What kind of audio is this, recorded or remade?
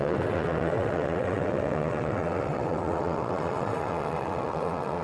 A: remade